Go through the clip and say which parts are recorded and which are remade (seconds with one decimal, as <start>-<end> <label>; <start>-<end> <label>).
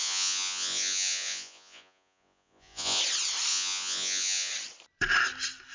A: 0.0-3.0 remade; 3.0-3.5 recorded; 3.5-4.5 remade; 4.5-5.7 recorded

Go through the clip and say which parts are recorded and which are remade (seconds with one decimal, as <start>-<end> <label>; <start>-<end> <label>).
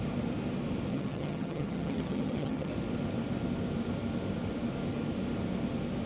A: 0.0-0.9 recorded; 0.9-2.7 remade; 2.7-6.1 recorded